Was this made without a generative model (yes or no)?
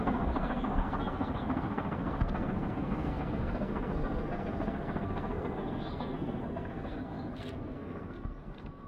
no